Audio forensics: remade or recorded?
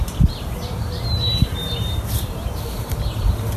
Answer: recorded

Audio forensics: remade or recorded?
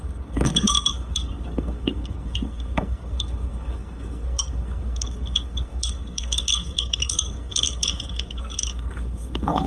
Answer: remade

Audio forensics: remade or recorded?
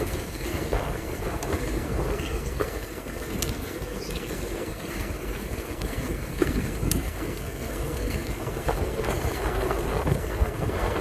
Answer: remade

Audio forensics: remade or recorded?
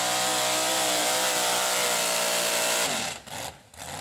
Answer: recorded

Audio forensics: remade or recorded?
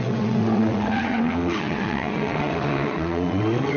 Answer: remade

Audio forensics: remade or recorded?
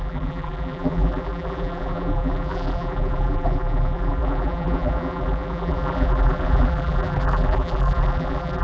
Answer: remade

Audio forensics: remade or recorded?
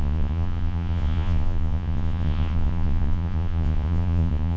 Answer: remade